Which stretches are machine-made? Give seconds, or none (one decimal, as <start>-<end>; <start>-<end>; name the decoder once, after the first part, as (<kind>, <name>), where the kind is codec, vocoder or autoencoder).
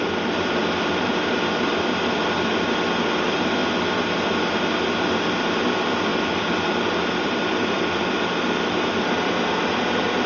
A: 0.0-3.6 (vocoder, BigVGAN v2); 5.1-10.3